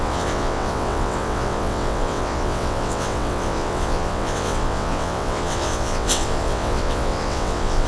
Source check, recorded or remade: remade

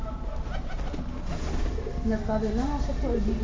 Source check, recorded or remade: recorded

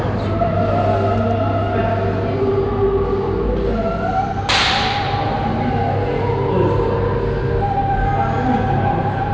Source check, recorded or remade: recorded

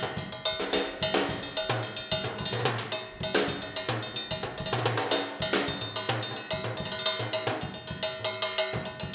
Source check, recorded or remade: recorded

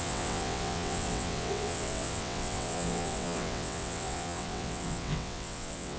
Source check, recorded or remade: remade